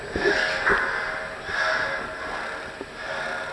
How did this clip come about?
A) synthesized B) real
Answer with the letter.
B